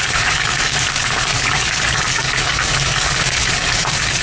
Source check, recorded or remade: remade